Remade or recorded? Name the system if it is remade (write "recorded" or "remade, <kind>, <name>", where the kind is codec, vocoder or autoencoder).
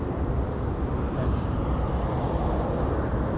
recorded